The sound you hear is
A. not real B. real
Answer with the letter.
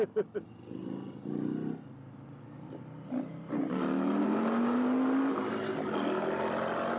B